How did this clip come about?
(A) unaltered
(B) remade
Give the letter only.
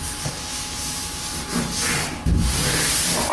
A